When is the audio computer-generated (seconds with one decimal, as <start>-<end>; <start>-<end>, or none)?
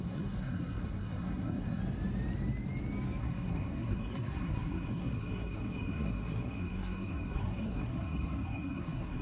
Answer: 0.0-1.8; 3.2-9.2